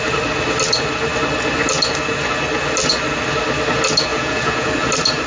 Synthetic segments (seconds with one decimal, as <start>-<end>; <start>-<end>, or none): 4.1-4.7